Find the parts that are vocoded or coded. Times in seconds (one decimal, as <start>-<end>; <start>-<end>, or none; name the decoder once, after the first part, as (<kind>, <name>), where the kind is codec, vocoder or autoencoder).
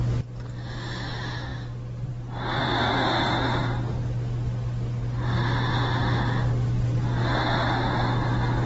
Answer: none